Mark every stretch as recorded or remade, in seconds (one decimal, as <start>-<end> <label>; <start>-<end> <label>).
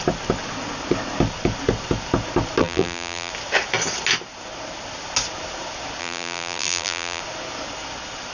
0.0-2.6 recorded; 2.6-3.3 remade; 3.3-6.0 recorded; 6.0-7.2 remade; 7.2-8.3 recorded